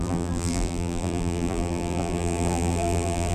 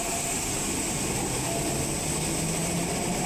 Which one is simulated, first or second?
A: first